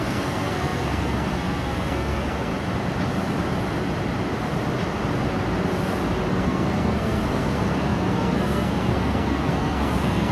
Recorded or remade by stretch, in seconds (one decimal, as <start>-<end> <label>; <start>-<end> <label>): 0.0-2.5 remade; 2.5-6.3 recorded; 6.3-10.3 remade

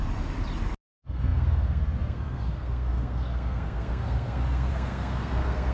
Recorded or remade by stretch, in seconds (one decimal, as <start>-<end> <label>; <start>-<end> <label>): 0.0-0.9 recorded; 0.9-5.7 remade

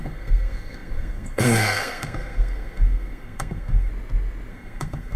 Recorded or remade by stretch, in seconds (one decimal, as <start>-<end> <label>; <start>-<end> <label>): 0.0-3.9 remade; 3.9-4.5 recorded; 4.5-5.2 remade

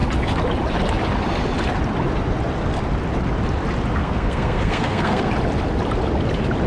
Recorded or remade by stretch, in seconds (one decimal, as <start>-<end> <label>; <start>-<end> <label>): 0.0-4.0 recorded; 4.0-5.3 remade; 5.3-6.7 recorded

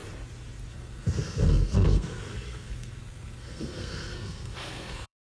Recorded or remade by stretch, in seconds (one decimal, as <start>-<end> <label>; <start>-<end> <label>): 0.0-0.7 recorded; 0.7-5.4 remade